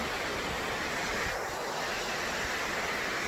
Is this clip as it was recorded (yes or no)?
yes